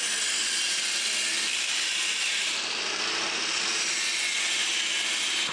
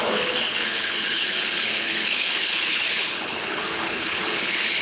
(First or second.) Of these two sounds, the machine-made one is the second